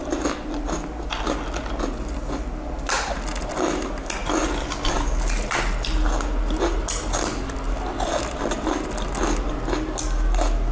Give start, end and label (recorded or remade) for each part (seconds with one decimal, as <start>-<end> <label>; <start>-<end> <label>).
0.0-10.7 recorded